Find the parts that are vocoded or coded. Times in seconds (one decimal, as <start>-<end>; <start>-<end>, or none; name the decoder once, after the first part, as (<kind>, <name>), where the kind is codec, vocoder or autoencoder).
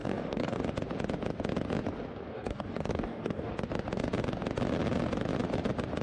0.0-0.6 (codec, DAC); 2.3-3.5